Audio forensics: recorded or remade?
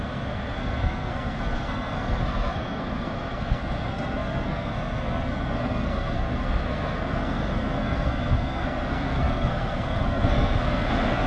remade